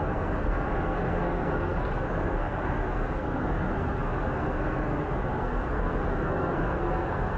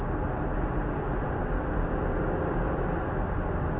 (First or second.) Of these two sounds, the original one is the second